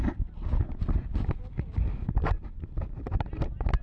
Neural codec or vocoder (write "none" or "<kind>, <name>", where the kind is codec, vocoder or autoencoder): none